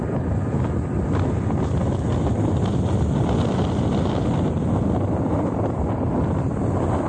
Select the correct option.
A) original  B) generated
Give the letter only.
A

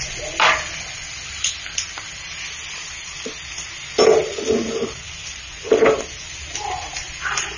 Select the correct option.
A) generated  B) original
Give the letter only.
B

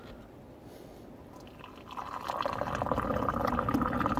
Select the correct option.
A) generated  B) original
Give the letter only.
B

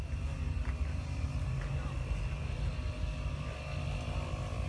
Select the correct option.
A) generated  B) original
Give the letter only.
B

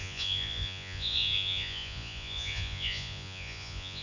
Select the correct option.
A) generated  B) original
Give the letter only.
A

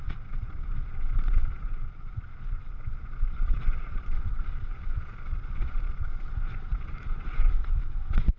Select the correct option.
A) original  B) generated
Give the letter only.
B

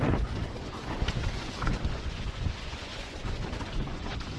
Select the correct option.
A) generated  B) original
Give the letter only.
A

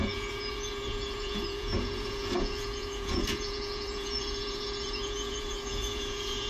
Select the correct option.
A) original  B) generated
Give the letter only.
B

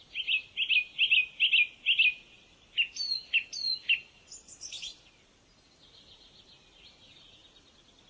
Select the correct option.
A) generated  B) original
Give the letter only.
B